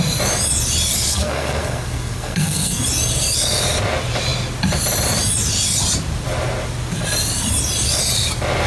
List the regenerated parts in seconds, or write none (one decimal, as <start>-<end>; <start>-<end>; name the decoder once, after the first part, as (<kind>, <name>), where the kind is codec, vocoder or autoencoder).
1.1-2.8 (codec, SNAC)